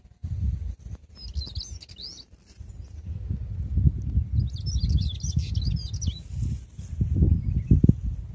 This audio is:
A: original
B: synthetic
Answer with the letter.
A